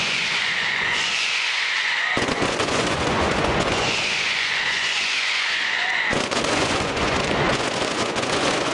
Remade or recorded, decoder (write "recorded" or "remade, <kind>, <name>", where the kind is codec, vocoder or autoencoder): remade, vocoder, Vocos